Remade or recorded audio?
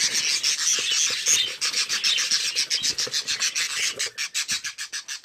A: recorded